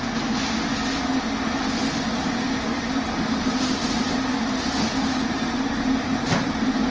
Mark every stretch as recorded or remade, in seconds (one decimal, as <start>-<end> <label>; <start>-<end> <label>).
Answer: 0.0-1.8 recorded; 1.8-6.9 remade